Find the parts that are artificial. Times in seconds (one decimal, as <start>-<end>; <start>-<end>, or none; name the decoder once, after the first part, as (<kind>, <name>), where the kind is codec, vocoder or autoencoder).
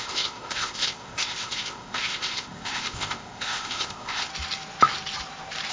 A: 0.0-4.3 (codec, ZipCodec)